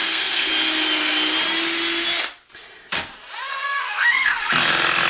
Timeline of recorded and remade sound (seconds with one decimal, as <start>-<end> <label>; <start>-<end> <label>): 0.0-0.5 remade; 0.5-3.5 recorded; 3.5-4.5 remade; 4.5-5.1 recorded